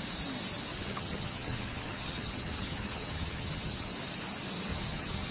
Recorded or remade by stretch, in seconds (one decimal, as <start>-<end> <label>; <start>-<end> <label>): 0.0-0.7 recorded; 0.7-3.9 remade; 3.9-4.7 recorded; 4.7-5.3 remade